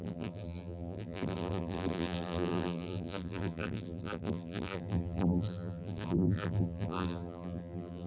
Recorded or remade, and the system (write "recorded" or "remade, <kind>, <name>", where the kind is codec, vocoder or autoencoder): remade, vocoder, BigVGAN v2